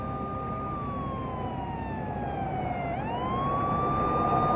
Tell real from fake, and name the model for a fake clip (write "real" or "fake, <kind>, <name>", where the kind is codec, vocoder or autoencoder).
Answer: real